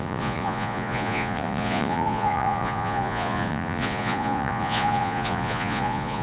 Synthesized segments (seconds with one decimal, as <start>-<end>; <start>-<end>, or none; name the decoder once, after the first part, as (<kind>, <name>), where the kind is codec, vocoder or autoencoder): 0.0-6.2 (vocoder, Vocos)